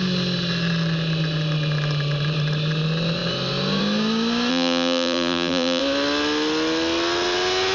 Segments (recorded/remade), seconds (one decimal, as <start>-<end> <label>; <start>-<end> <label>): 0.0-4.5 recorded; 4.5-5.8 remade; 5.8-7.7 recorded